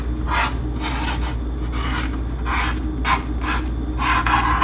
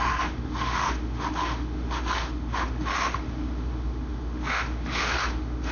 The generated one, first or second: second